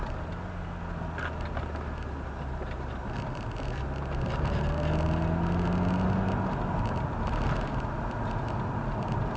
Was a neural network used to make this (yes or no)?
no